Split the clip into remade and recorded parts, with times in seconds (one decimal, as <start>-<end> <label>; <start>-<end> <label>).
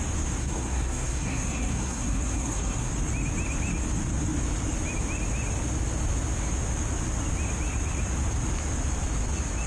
0.0-0.4 recorded; 0.4-2.9 remade; 2.9-9.7 recorded